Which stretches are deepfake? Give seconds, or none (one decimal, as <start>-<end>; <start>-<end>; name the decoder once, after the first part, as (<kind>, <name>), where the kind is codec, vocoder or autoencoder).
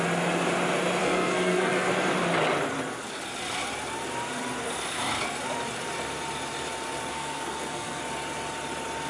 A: 1.0-1.9 (codec, SNAC); 7.1-8.0